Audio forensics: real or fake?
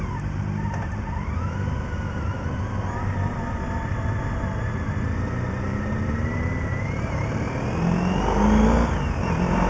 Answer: real